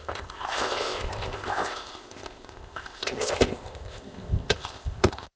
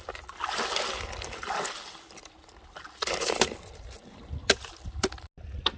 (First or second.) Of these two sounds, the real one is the second